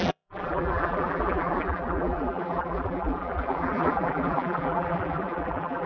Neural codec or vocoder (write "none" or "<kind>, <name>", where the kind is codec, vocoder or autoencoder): vocoder, BigVGAN v2